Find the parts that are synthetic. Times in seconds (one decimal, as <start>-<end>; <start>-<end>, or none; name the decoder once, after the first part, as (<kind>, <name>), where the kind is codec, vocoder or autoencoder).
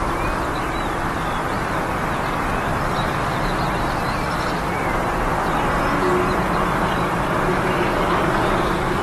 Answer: 7.5-9.0 (codec, DAC)